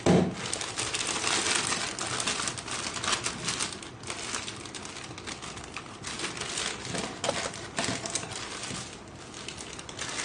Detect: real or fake real